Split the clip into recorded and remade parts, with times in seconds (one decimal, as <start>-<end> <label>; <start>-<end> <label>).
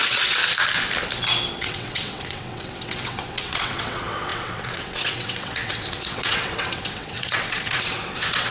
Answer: 0.0-0.4 remade; 0.4-1.5 recorded; 1.5-8.5 remade